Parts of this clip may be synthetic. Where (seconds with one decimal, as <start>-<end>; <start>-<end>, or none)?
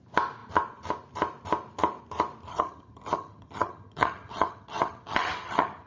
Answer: 2.5-5.9